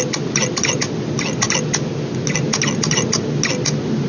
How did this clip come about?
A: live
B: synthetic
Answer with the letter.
A